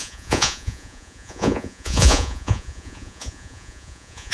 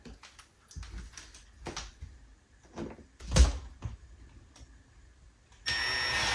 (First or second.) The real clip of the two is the second